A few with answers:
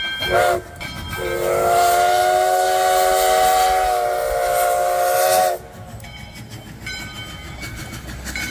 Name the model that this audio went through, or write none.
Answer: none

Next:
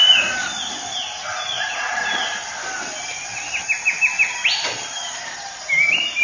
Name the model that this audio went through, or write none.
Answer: none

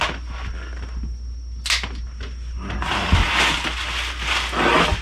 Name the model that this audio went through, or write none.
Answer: none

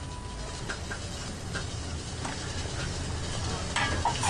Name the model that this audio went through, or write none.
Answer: none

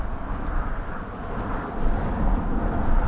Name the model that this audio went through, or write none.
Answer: none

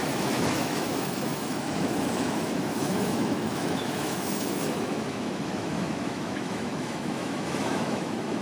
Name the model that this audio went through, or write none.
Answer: autoencoder, DAC-VAE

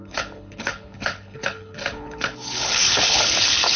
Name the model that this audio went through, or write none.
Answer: codec, HILCodec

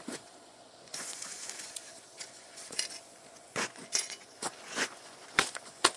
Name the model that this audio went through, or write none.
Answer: vocoder, Vocos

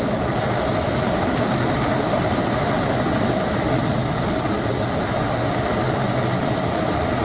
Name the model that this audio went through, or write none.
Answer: none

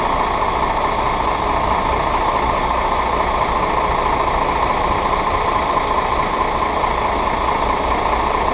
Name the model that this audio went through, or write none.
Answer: none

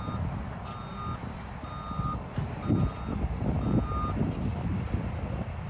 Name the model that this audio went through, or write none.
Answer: none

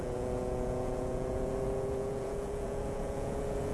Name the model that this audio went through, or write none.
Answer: vocoder, Vocos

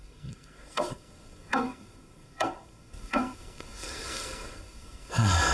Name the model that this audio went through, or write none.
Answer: codec, SNAC